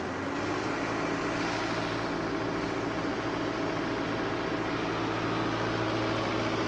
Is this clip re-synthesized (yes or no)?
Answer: no